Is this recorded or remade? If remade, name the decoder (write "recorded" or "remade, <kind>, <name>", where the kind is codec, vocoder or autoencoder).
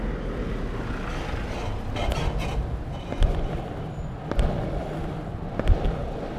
recorded